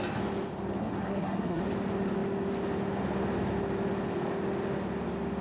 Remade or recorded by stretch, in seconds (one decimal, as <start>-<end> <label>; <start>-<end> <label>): 0.0-0.8 recorded; 0.8-1.6 remade; 1.6-5.4 recorded